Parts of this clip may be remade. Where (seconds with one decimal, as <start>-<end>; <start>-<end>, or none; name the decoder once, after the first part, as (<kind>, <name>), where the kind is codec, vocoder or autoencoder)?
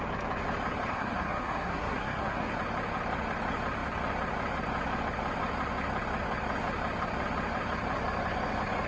0.9-2.5 (codec, SNAC)